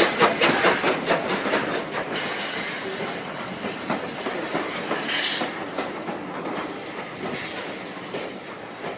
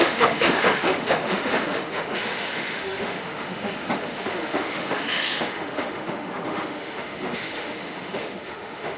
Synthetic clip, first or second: second